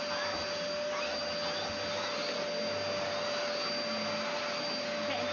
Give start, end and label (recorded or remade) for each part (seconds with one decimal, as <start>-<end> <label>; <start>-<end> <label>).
0.0-5.3 recorded